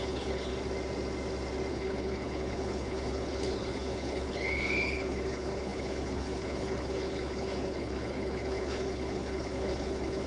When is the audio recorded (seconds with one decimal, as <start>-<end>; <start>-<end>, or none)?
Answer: 0.5-1.7